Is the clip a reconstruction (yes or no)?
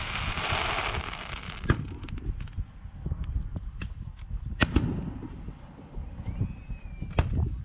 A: no